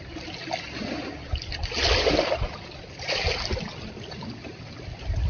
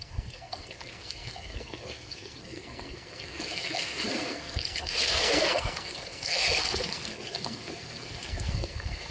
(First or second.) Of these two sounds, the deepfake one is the second